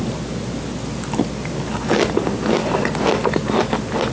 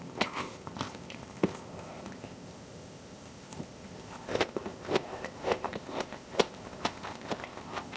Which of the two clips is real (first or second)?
first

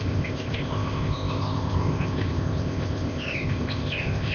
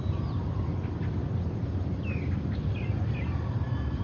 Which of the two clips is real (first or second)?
second